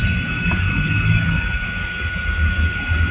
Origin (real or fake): real